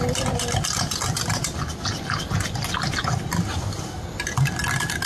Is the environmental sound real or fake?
real